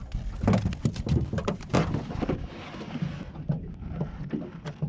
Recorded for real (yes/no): yes